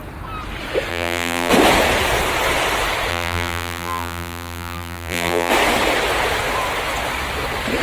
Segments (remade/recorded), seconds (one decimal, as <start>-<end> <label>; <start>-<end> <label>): 0.0-0.9 recorded; 0.9-1.5 remade; 1.5-3.1 recorded; 3.1-5.5 remade; 5.5-7.8 recorded